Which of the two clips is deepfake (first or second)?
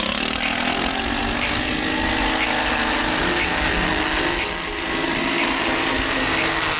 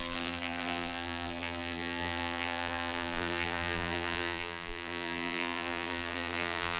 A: second